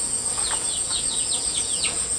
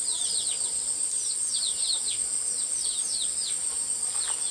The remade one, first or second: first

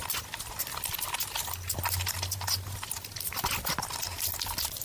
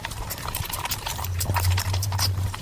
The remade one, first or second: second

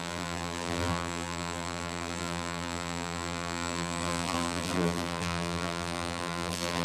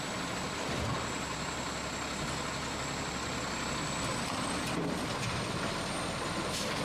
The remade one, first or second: first